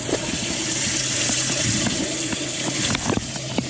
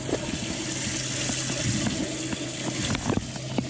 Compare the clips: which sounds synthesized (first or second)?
first